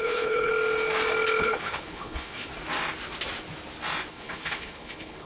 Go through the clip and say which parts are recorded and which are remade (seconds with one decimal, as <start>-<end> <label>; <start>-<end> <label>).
0.0-0.5 remade; 0.5-1.4 recorded; 1.4-2.5 remade; 2.5-4.1 recorded; 4.1-5.3 remade